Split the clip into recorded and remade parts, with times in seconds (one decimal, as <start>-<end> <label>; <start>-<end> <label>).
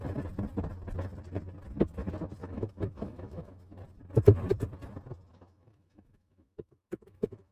0.0-2.4 recorded; 2.4-3.8 remade; 3.8-5.3 recorded; 5.3-7.5 remade